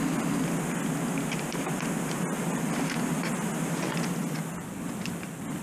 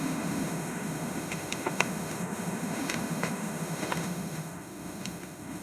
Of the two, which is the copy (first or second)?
second